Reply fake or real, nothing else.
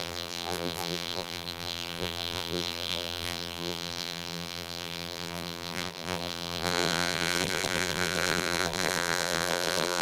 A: fake